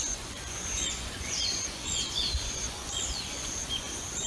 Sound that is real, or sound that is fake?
fake